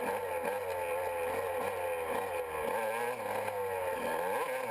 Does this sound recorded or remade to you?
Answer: recorded